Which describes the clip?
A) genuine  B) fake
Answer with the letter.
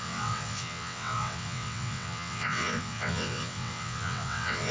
B